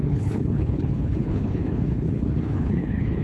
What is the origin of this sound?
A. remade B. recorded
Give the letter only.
A